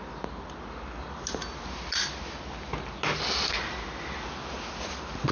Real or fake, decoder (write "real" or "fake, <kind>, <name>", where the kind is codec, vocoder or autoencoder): real